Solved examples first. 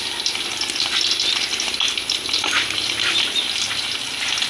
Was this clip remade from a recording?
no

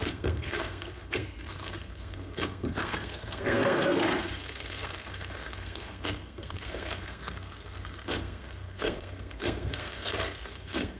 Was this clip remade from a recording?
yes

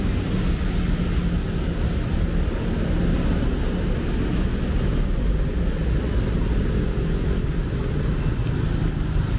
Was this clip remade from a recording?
no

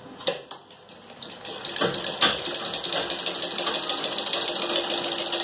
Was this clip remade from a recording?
no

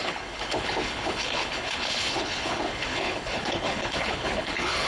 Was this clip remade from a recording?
yes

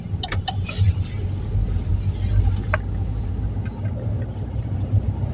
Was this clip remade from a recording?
no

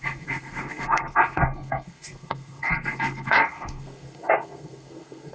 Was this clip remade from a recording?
yes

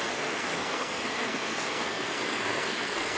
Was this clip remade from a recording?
yes